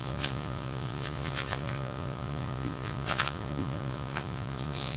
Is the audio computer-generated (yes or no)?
yes